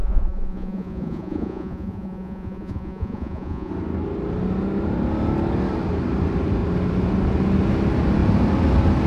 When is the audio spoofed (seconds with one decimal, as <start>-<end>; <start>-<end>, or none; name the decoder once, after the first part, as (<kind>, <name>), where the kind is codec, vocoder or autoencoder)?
0.0-3.7 (vocoder, Vocos)